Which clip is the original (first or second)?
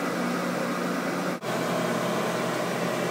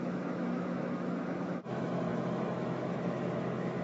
first